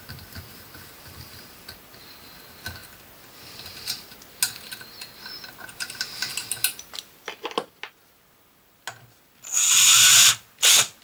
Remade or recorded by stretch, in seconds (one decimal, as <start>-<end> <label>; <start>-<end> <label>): 0.0-11.0 recorded